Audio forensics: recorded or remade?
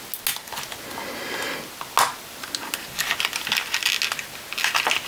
recorded